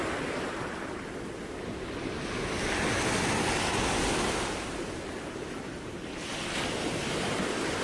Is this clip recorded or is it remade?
recorded